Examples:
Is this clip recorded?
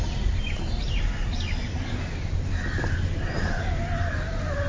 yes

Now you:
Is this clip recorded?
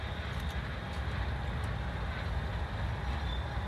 yes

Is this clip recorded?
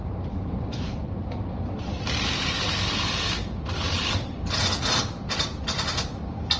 yes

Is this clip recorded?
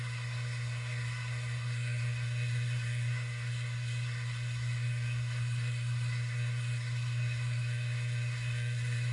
no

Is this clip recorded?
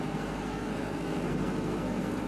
no